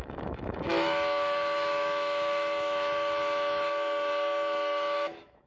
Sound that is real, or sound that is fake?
fake